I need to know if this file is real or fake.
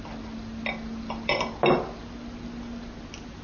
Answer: real